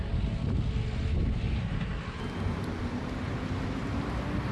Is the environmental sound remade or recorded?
recorded